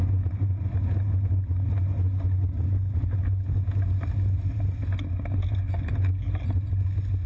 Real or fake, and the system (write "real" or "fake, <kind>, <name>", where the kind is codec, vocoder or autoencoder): real